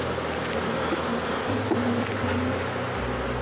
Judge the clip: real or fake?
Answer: real